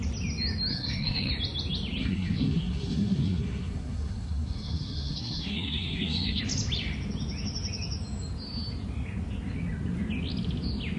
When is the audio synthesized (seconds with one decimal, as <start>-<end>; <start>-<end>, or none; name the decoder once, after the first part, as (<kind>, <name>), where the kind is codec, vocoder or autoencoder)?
0.7-1.3 (codec, SNAC); 2.0-6.4